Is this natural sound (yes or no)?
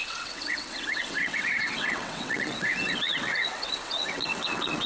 no